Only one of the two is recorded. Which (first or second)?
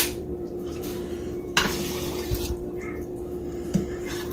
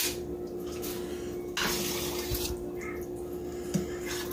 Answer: second